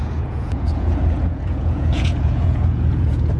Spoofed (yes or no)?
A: yes